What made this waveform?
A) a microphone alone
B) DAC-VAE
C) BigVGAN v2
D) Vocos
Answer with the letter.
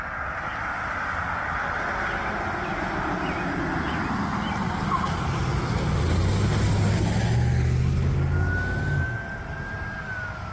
A